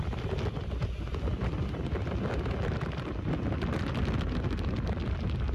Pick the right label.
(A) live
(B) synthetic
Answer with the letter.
A